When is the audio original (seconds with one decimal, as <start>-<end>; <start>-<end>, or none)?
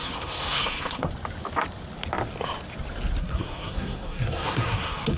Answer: 1.1-3.2